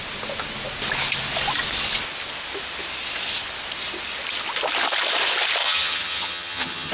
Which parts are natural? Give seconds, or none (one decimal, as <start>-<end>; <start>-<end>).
0.0-5.6